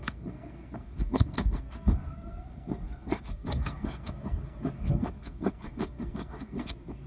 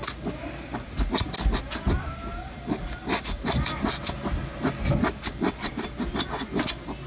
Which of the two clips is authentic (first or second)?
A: second